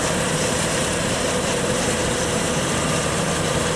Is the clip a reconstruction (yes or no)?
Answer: yes